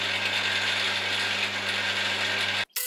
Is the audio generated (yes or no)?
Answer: no